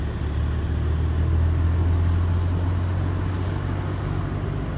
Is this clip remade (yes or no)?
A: no